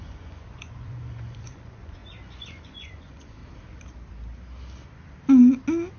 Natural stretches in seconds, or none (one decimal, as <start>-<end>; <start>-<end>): 3.4-6.0